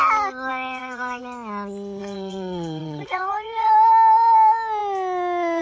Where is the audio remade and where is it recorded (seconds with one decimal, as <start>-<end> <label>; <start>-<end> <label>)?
0.0-0.5 recorded; 0.5-1.2 remade; 1.2-2.0 recorded; 2.0-3.7 remade; 3.7-5.6 recorded